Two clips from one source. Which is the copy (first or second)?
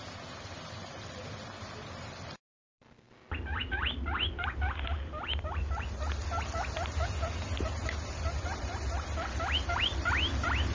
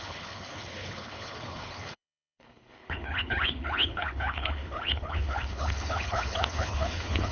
second